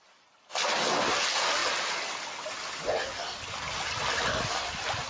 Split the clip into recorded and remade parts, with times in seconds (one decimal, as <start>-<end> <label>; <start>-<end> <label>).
0.0-5.1 recorded

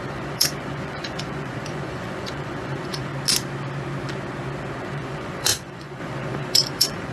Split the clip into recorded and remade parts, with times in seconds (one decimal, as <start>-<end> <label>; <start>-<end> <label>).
0.0-3.1 remade; 3.1-4.8 recorded; 4.8-7.1 remade

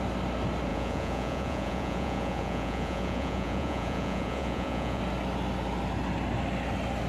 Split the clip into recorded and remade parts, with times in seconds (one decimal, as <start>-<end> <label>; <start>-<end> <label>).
0.0-0.7 recorded; 0.7-5.0 remade; 5.0-7.1 recorded